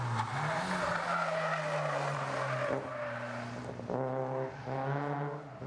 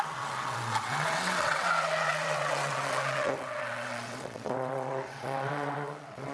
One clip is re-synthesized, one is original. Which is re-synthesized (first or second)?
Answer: second